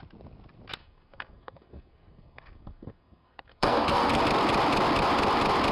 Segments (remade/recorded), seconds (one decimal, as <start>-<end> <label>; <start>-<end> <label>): 0.0-0.8 recorded; 0.8-4.2 remade; 4.2-5.7 recorded